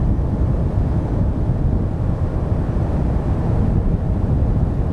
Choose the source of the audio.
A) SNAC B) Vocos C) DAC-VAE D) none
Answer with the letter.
D